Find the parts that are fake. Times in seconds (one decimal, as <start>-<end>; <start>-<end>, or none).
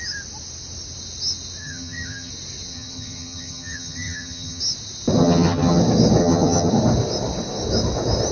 1.6-2.3; 2.7-4.6; 5.2-5.8; 6.2-6.7